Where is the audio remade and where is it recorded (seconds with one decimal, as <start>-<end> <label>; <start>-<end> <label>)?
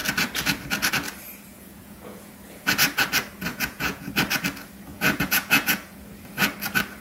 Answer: 0.0-1.5 recorded; 1.5-2.3 remade; 2.3-3.5 recorded; 3.5-4.1 remade; 4.1-4.9 recorded; 4.9-6.0 remade; 6.0-7.0 recorded